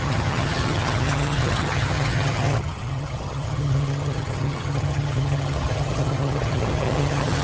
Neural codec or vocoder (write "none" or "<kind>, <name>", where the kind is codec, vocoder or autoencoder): vocoder, HiFi-GAN